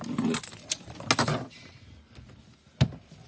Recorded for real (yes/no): yes